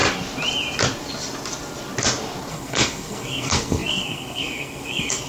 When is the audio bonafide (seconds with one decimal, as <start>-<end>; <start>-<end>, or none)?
0.0-2.5

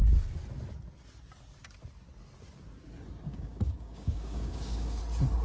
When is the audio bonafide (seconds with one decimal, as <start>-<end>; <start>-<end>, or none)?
0.0-3.3; 5.0-5.4

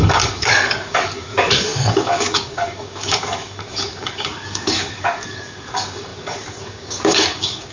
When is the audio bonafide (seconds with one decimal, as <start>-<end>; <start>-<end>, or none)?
none

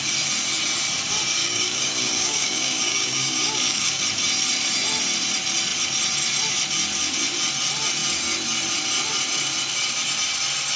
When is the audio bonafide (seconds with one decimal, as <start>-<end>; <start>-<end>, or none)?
0.0-1.4; 4.0-10.8

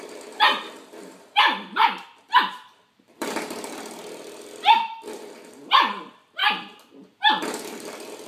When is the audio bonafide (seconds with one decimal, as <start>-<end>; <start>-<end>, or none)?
none

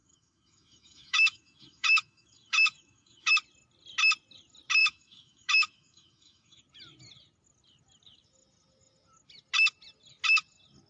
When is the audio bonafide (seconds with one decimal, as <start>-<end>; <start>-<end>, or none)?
3.3-4.8; 6.6-10.9